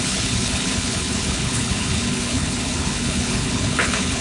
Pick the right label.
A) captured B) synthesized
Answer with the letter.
B